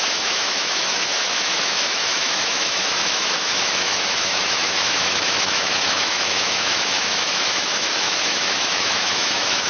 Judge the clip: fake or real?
fake